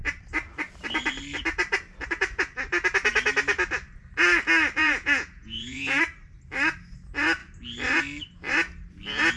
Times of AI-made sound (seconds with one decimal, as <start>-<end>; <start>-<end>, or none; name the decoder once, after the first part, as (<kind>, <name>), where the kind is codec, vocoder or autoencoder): 4.8-6.0 (vocoder, Vocos)